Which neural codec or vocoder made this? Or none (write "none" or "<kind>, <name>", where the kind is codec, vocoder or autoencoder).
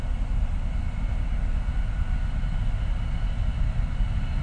none